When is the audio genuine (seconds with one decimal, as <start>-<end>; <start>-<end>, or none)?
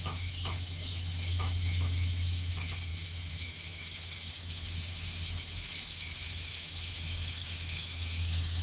none